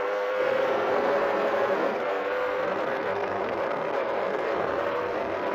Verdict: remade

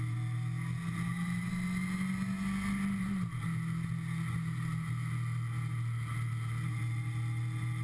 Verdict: recorded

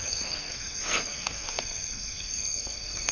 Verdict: remade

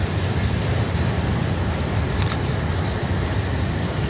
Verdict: recorded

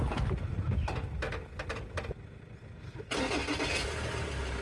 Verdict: recorded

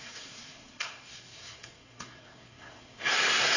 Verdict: remade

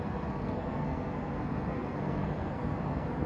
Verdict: remade